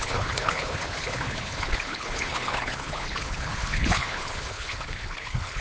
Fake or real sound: fake